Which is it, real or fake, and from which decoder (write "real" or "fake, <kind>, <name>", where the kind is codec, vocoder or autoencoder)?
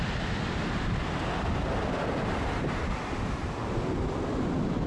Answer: real